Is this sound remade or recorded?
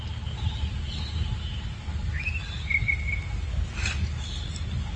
recorded